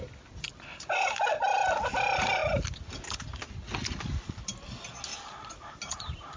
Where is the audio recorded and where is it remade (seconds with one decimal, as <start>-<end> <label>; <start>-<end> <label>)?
0.0-0.7 recorded; 0.7-1.3 remade; 1.3-5.1 recorded; 5.1-6.4 remade